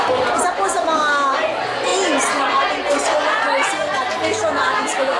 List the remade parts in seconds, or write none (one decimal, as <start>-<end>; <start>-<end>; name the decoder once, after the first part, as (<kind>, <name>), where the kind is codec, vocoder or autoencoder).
none